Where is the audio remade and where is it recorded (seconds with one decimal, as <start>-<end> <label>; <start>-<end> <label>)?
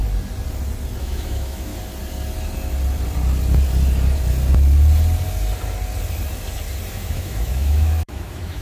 0.0-1.0 recorded; 1.0-1.7 remade; 1.7-6.9 recorded; 6.9-8.6 remade